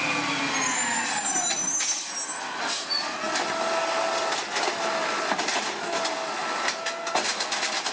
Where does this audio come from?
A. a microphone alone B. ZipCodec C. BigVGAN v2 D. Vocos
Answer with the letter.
A